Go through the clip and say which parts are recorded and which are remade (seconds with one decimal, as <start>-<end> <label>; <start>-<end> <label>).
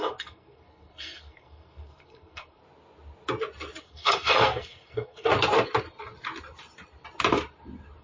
0.0-2.6 remade; 2.6-3.8 recorded; 3.8-5.3 remade; 5.3-8.0 recorded